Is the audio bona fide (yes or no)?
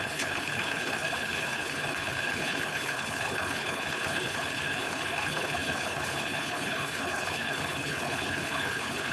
no